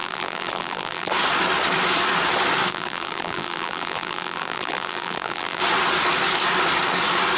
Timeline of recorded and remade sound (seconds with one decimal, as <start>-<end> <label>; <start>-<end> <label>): 0.0-1.1 remade; 1.1-2.7 recorded; 2.7-5.6 remade; 5.6-7.4 recorded